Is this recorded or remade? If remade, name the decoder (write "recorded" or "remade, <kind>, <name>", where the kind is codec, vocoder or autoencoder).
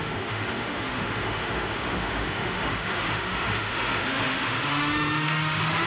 remade, autoencoder, DAC-VAE